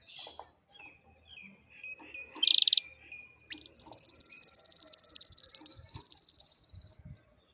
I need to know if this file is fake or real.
real